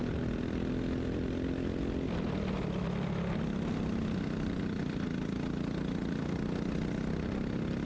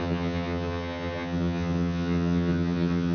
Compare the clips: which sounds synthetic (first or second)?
second